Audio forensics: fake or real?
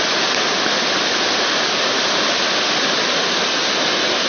real